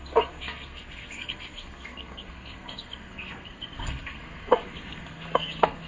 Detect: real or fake fake